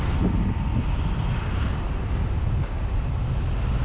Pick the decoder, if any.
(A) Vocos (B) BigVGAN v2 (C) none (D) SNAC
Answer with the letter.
C